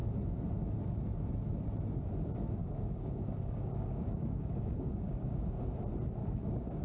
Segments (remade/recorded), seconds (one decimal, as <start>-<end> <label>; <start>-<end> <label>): 0.0-2.6 recorded; 2.6-5.6 remade; 5.6-6.2 recorded; 6.2-6.8 remade